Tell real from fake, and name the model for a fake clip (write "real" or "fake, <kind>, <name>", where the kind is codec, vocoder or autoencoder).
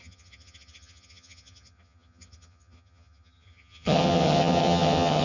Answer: fake, vocoder, HiFi-GAN